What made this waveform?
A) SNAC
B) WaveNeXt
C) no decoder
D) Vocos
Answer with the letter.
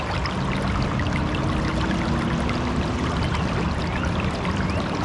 C